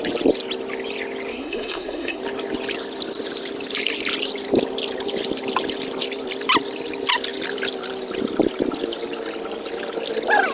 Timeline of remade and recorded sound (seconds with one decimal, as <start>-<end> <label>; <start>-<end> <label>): 0.0-1.3 recorded; 1.3-2.2 remade; 2.2-10.5 recorded